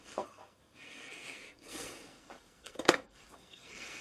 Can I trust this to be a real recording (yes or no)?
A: no